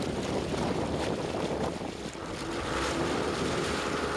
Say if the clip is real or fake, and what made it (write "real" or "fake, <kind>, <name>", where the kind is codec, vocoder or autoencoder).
fake, vocoder, BigVGAN v2